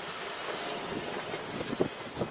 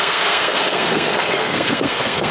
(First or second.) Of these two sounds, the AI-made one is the second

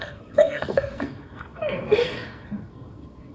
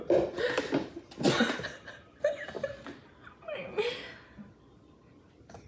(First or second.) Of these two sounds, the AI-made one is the first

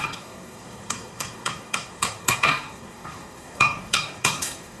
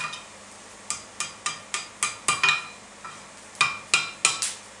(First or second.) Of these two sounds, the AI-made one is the first